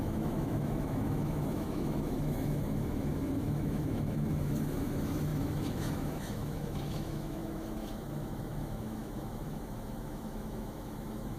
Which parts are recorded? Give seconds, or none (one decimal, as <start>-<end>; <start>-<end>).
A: none